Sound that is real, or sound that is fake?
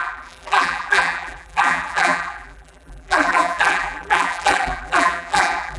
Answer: fake